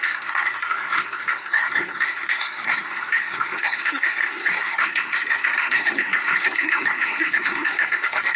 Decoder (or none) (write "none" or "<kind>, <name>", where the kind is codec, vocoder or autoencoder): codec, SNAC